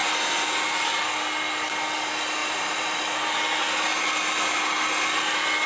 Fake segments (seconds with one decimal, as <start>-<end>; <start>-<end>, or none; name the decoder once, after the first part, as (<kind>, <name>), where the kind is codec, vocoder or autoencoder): 2.4-3.0 (vocoder, BigVGAN v2)